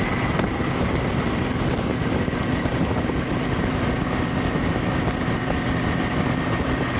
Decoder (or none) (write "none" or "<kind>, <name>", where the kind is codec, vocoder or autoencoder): none